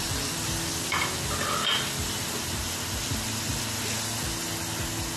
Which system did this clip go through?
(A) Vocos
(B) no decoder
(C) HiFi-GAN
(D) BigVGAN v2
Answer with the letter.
D